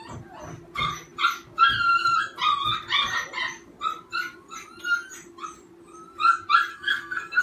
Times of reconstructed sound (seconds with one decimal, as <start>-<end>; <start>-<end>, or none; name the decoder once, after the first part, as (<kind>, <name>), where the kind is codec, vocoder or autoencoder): 6.7-7.4 (codec, SNAC)